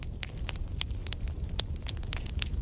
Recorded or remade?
remade